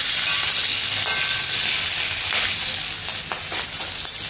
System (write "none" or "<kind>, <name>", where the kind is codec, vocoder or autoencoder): none